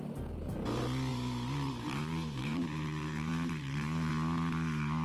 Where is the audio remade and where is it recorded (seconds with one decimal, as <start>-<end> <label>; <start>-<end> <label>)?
0.0-1.1 recorded; 1.1-4.1 remade; 4.1-5.0 recorded